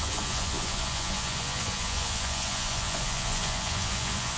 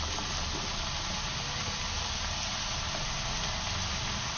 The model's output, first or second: first